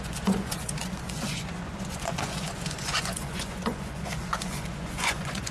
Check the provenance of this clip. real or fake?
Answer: fake